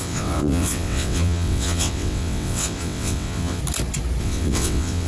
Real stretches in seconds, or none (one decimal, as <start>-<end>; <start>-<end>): 3.6-4.2